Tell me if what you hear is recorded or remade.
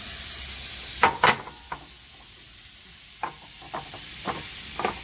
recorded